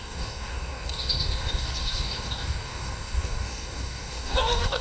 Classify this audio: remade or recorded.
remade